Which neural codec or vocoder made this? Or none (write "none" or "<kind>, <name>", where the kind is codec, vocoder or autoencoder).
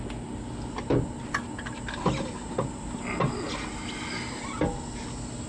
none